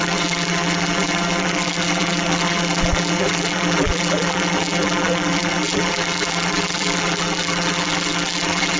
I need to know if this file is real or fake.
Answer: fake